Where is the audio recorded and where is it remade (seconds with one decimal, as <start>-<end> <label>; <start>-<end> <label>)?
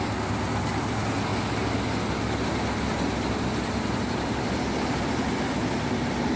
0.0-6.4 recorded